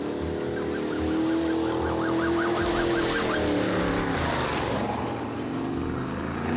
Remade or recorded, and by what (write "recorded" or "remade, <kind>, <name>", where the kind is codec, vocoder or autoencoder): recorded